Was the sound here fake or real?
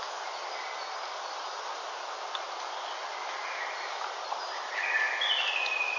real